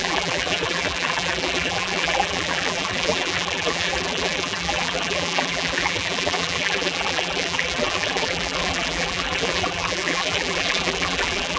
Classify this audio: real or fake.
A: fake